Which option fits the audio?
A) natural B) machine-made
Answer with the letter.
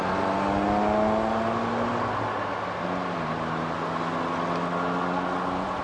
A